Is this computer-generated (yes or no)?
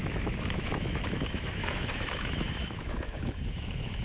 yes